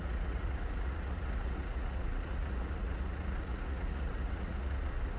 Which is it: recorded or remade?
remade